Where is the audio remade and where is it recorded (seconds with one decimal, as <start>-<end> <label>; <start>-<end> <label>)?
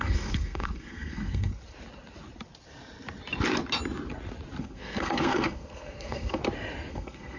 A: 0.0-1.5 remade; 1.5-4.6 recorded; 4.6-6.4 remade; 6.4-6.9 recorded; 6.9-7.4 remade